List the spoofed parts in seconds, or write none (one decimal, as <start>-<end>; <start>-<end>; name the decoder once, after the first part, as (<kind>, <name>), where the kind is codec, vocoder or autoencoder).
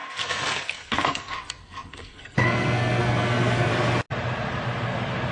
0.0-3.7 (codec, SNAC)